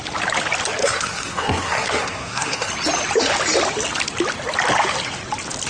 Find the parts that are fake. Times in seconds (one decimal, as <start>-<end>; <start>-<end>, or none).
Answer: 0.8-2.7